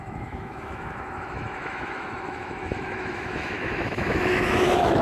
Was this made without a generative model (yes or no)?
no